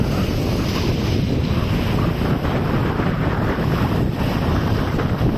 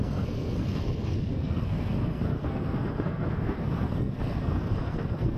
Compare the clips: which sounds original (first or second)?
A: first